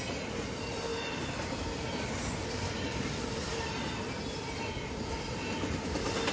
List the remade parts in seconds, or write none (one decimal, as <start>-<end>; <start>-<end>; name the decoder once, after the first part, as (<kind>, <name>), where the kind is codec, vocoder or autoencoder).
0.0-3.5 (vocoder, BigVGAN v2); 4.6-6.3